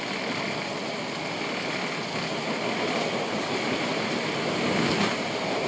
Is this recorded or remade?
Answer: recorded